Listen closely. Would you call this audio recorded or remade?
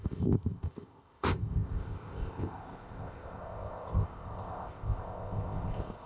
remade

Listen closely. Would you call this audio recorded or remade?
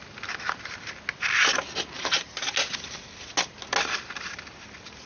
recorded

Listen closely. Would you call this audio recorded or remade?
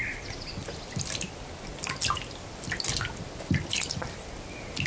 recorded